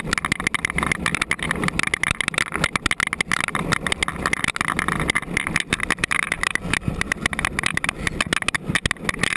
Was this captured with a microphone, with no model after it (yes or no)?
yes